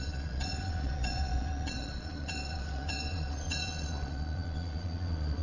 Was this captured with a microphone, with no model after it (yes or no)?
no